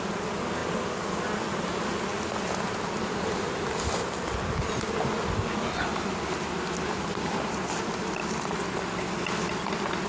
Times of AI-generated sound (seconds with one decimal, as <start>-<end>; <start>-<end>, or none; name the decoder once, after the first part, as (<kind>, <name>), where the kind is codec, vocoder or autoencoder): 7.1-7.8 (vocoder, BigVGAN v2)